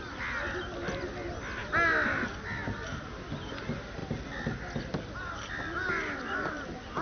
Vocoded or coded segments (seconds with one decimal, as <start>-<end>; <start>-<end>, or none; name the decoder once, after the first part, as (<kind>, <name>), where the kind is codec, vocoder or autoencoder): none